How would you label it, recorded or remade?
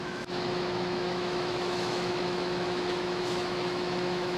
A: remade